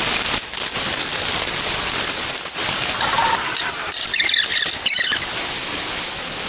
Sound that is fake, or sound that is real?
real